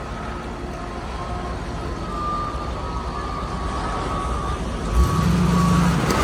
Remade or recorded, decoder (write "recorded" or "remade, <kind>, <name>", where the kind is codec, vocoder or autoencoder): recorded